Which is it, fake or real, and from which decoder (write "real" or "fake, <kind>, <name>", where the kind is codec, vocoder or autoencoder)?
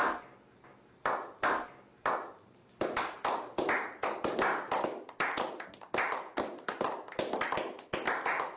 real